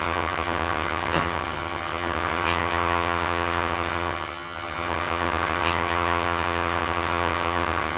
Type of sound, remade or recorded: remade